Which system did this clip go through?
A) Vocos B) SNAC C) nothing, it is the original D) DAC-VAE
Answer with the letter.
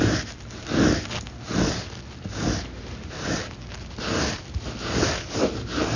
C